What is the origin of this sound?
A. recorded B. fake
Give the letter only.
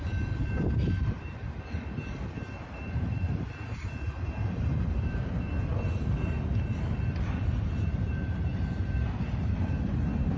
B